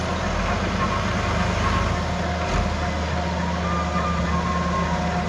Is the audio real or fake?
real